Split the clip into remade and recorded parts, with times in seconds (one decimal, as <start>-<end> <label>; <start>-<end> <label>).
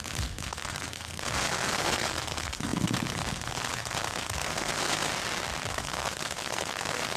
0.0-5.1 remade; 5.1-5.7 recorded; 5.7-7.2 remade